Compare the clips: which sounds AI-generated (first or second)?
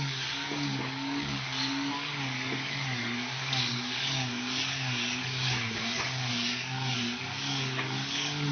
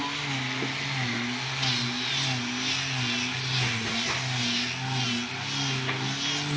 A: first